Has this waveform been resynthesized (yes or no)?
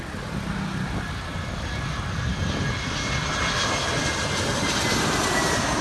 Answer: no